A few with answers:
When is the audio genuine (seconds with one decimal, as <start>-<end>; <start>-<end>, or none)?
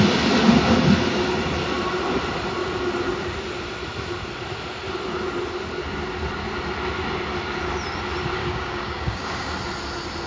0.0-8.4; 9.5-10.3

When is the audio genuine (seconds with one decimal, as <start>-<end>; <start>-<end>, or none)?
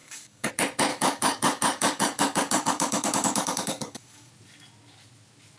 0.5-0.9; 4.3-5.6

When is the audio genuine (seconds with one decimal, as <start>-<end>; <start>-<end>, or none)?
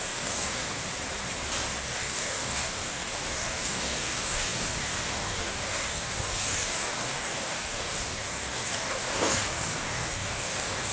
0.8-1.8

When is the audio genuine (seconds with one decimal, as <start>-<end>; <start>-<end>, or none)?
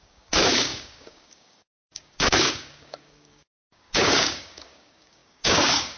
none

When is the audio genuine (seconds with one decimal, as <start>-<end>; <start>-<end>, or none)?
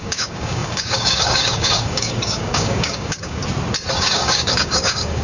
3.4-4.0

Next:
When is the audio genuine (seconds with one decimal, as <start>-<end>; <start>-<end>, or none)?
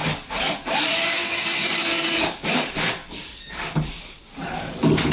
none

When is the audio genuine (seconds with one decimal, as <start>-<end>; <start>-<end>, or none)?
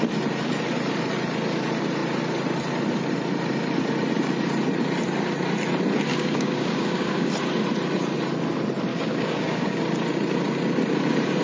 0.0-6.1; 7.3-8.9; 9.8-11.4